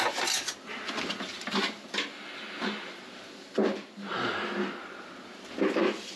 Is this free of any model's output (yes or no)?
yes